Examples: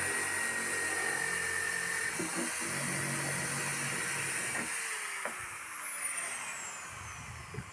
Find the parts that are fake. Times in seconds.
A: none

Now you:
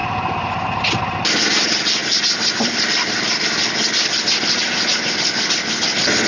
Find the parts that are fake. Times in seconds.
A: none

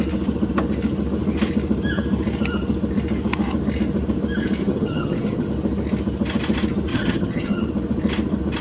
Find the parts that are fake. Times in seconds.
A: 4.6-5.5 (vocoder, HiFi-GAN); 6.9-7.6

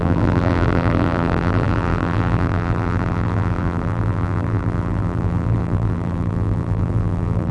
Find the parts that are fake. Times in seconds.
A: 0.0-7.5 (vocoder, BigVGAN v2)